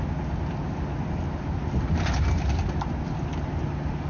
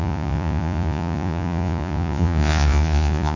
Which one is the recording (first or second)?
first